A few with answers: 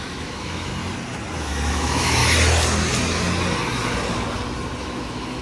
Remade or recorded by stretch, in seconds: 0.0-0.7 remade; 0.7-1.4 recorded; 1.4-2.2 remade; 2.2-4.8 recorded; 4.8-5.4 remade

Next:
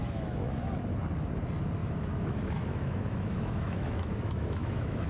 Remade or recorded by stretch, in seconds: 0.0-0.8 remade; 0.8-1.8 recorded; 1.8-5.1 remade